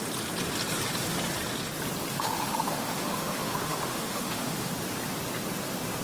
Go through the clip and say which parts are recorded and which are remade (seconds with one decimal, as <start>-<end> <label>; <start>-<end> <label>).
0.0-2.1 recorded; 2.1-4.7 remade; 4.7-6.0 recorded